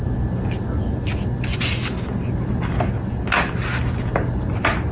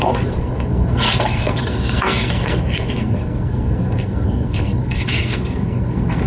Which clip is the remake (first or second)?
second